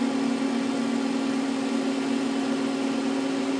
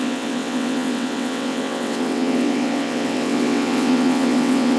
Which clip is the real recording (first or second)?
first